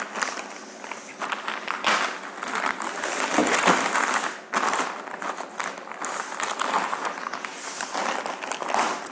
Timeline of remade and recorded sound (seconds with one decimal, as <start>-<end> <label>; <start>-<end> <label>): 0.0-9.1 recorded